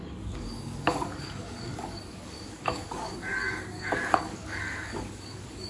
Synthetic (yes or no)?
yes